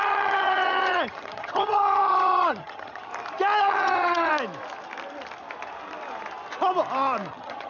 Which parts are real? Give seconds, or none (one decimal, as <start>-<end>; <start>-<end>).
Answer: 3.1-3.6; 4.3-7.3